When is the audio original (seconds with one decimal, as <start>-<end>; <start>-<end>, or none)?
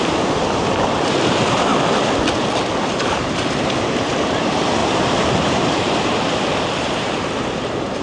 1.7-3.1